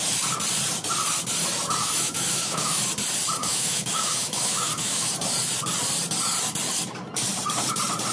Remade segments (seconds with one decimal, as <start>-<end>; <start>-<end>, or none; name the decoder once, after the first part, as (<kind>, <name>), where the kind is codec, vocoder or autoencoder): 1.8-2.8 (autoencoder, DAC-VAE); 3.4-5.1